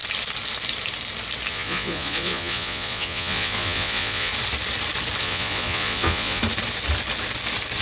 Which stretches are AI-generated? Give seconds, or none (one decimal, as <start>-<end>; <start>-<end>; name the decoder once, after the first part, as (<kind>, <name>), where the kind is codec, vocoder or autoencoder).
1.5-4.3 (vocoder, Vocos); 5.2-6.4